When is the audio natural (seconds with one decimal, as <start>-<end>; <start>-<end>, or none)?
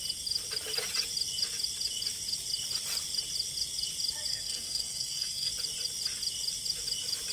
0.0-4.3; 5.5-7.3